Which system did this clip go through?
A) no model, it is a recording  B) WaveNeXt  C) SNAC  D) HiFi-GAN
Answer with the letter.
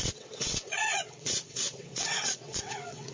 B